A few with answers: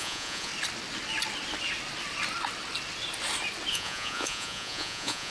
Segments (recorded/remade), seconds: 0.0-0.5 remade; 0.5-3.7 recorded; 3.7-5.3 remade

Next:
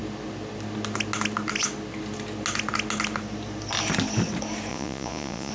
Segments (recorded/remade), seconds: 0.0-4.7 recorded; 4.7-5.5 remade

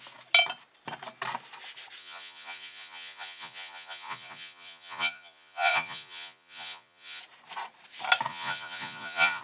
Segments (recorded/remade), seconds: 0.0-2.0 recorded; 2.0-7.2 remade; 7.2-8.3 recorded; 8.3-9.4 remade

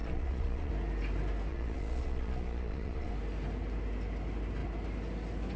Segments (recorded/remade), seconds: 0.0-0.7 remade; 0.7-1.5 recorded; 1.5-3.1 remade; 3.1-5.6 recorded

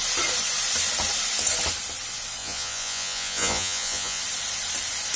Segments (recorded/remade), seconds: 0.0-2.4 recorded; 2.4-4.2 remade; 4.2-5.2 recorded

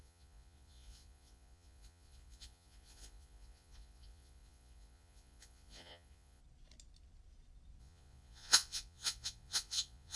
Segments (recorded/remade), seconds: 0.0-6.4 remade; 6.4-7.8 recorded; 7.8-10.2 remade